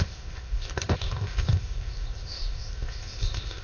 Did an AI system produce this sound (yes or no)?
yes